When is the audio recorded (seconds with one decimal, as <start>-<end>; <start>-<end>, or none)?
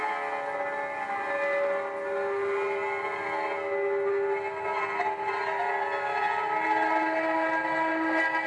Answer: 0.0-8.5